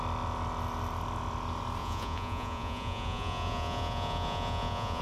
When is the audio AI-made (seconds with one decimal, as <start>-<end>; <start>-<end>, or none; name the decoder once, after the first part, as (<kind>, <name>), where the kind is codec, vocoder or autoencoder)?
1.8-5.0 (vocoder, Vocos)